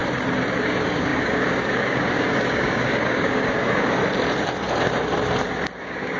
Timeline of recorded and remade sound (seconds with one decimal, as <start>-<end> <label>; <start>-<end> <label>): 0.0-0.6 recorded; 0.6-4.0 remade; 4.0-5.8 recorded; 5.8-6.2 remade